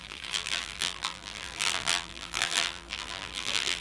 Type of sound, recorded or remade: remade